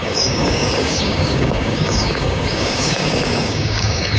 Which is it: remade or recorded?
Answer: remade